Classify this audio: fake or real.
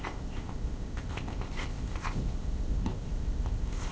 fake